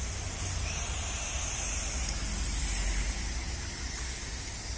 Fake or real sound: real